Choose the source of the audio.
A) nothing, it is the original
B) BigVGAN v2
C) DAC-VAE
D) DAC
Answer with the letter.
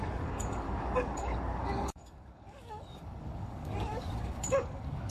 D